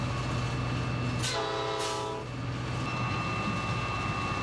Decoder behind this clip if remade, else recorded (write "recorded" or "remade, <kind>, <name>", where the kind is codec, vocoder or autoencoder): recorded